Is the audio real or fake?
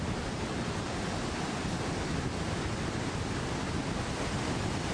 real